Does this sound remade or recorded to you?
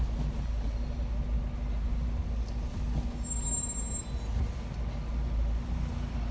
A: recorded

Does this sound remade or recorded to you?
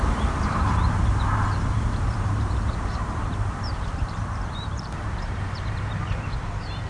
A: remade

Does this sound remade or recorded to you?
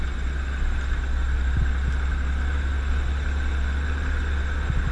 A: recorded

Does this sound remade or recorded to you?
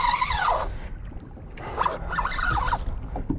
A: remade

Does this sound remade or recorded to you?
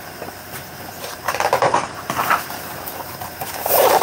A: remade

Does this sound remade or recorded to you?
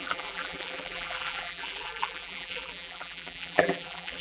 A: remade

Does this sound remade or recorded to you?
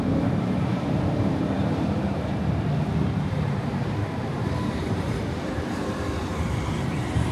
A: remade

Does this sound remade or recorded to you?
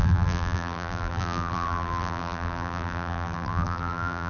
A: remade